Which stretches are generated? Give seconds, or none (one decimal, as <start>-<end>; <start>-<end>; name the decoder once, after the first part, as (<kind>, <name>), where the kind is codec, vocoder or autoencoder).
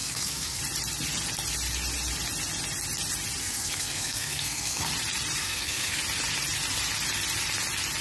0.0-0.6 (codec, SNAC); 3.4-4.9; 5.4-6.0